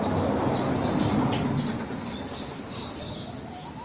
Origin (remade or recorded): recorded